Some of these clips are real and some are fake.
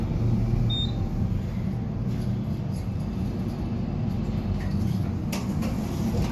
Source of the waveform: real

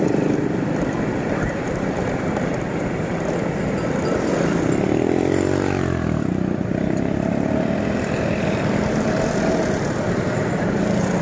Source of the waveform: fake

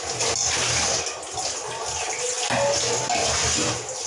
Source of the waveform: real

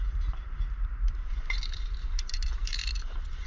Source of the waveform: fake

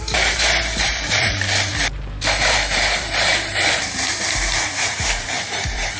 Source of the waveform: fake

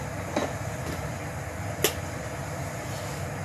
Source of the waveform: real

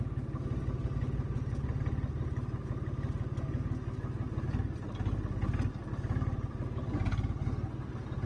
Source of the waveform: real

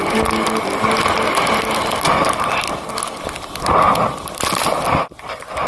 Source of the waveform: real